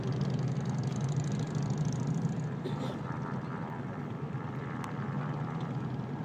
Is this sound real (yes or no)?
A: yes